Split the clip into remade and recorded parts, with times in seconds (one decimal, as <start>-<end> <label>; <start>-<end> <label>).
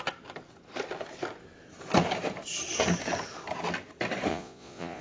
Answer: 0.0-4.3 recorded; 4.3-5.0 remade